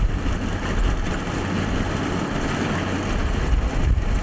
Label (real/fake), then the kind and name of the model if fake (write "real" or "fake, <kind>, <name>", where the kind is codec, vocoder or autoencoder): real